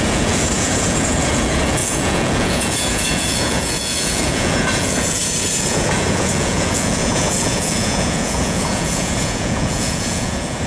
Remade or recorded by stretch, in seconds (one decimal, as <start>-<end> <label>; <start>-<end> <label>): 0.0-10.7 remade